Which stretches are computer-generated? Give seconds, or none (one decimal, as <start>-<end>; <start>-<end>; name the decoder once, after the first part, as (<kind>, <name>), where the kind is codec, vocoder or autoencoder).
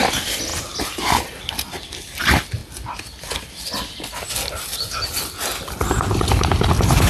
none